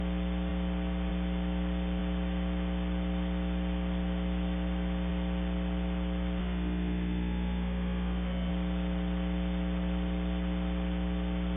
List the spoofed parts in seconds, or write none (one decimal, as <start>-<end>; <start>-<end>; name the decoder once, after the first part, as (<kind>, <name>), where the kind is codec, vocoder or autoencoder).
6.4-8.5 (autoencoder, DAC-VAE)